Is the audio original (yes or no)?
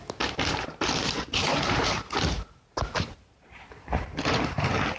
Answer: yes